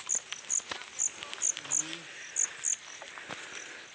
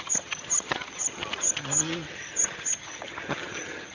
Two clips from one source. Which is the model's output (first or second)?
second